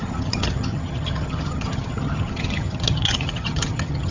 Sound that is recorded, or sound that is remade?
remade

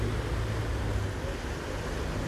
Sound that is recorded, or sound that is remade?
recorded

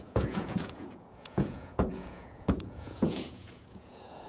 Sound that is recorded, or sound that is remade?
remade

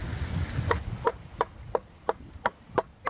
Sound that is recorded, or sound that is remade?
recorded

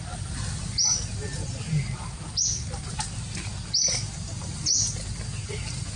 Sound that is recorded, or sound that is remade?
recorded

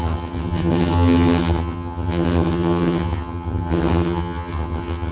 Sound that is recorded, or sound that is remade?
remade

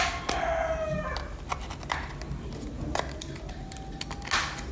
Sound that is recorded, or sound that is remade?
recorded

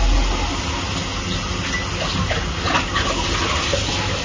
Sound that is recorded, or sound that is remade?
recorded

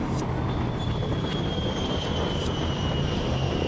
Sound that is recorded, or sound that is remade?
recorded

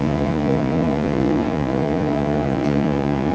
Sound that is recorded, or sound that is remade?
remade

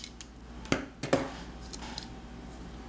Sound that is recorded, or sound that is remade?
recorded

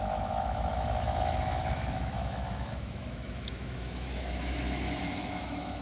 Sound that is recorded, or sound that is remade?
remade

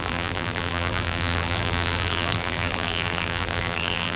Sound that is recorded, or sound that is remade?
remade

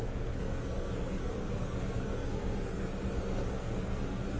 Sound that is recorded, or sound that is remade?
remade